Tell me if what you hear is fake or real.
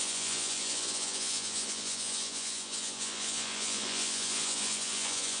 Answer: fake